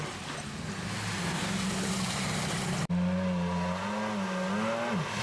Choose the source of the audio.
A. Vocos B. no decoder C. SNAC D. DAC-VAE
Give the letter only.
B